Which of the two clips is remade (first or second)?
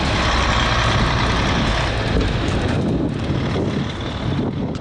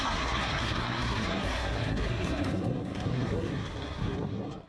second